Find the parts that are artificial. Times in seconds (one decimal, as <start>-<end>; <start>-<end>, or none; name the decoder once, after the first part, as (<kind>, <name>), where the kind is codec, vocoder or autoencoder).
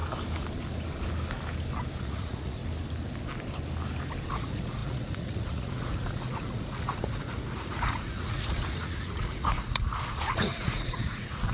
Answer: 2.0-2.6 (vocoder, Vocos); 4.3-11.5